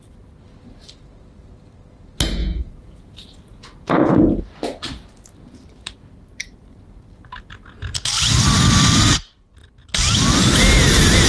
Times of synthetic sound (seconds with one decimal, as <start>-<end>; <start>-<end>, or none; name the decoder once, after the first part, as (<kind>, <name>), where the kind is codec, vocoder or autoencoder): 2.4-4.1 (vocoder, Vocos)